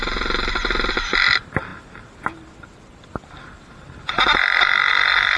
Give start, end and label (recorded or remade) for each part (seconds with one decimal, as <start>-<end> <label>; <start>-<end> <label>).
0.0-1.7 recorded; 1.7-4.9 remade; 4.9-5.4 recorded